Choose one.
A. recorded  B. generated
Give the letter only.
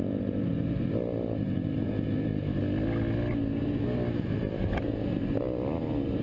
A